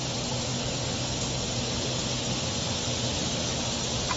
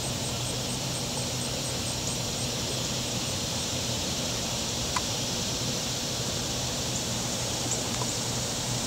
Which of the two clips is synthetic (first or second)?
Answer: second